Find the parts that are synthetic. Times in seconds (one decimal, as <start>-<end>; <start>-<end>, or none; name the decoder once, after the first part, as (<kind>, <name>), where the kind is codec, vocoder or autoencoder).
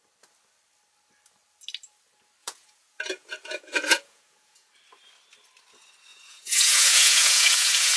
2.4-4.7 (vocoder, Vocos); 6.1-8.0